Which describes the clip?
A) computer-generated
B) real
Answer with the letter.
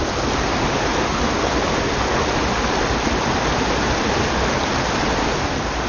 B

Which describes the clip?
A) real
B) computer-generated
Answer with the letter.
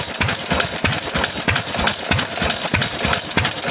A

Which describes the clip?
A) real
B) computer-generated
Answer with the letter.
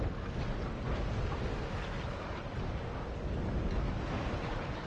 A